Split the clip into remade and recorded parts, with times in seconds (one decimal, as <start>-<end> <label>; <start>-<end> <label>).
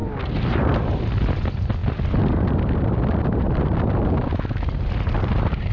0.0-1.1 recorded; 1.1-1.8 remade; 1.8-5.2 recorded; 5.2-5.7 remade